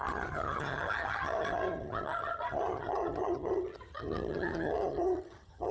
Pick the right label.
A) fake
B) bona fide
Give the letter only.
A